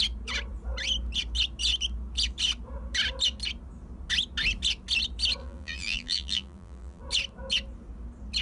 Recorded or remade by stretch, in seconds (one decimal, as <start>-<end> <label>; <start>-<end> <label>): 0.0-5.4 recorded; 5.4-7.0 remade; 7.0-8.4 recorded